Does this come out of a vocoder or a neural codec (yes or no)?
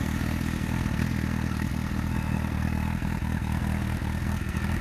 yes